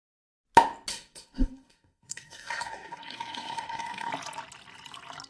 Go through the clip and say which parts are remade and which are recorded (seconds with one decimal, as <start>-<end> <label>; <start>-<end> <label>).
0.0-0.9 recorded; 0.9-4.1 remade; 4.1-5.3 recorded